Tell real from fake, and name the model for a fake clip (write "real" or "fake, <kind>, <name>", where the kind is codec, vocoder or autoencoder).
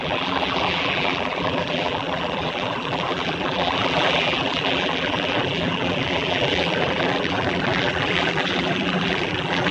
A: fake, vocoder, BigVGAN v2